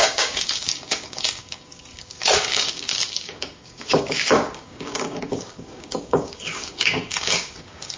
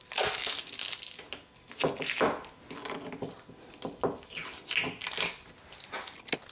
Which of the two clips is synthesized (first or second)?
first